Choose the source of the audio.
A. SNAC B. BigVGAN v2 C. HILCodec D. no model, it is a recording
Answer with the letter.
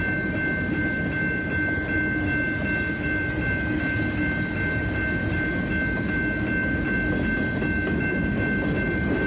D